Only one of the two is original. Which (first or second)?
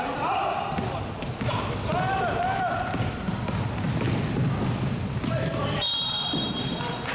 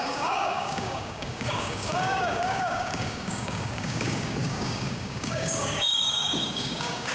first